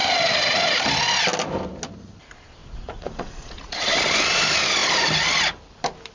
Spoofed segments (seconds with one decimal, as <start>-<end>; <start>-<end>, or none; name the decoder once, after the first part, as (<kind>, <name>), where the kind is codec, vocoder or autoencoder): 2.6-3.7 (vocoder, Vocos)